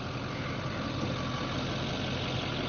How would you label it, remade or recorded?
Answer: recorded